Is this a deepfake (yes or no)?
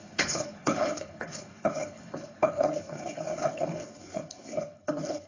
yes